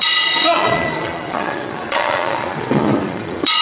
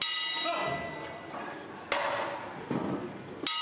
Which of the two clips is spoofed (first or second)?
first